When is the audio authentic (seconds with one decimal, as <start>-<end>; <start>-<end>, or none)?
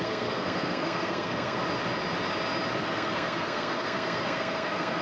1.6-2.8